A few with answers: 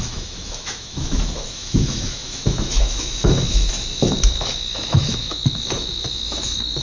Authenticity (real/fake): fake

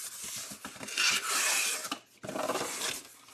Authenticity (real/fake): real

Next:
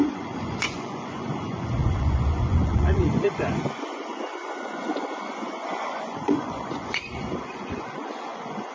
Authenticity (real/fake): fake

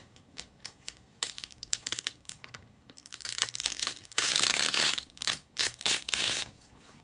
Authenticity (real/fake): fake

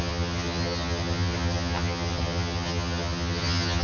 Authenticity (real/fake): fake